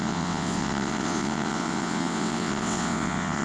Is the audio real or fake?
fake